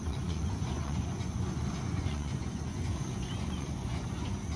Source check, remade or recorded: remade